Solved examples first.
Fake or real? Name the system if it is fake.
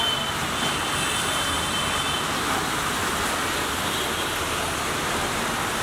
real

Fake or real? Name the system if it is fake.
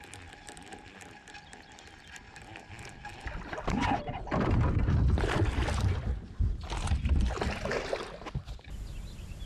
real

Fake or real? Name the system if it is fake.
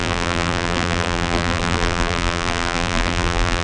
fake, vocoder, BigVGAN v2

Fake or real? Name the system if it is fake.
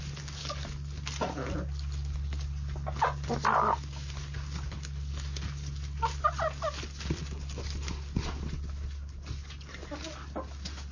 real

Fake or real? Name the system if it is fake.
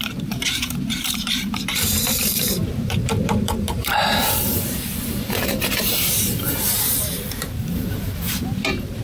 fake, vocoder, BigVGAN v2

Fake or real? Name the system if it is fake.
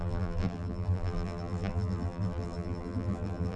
fake, vocoder, BigVGAN v2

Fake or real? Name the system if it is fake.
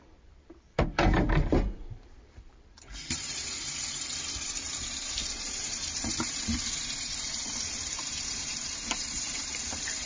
fake, vocoder, BigVGAN v2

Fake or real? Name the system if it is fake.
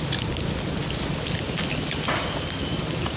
real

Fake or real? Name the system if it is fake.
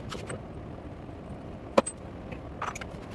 fake, vocoder, BigVGAN v2